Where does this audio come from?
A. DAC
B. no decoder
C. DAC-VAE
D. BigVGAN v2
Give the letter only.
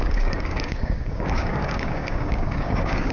A